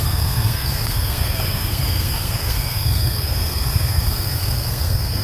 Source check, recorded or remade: remade